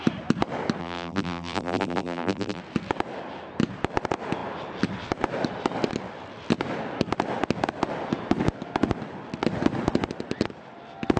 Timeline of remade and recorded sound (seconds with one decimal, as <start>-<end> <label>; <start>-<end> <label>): 0.0-0.8 recorded; 0.8-2.6 remade; 2.6-11.2 recorded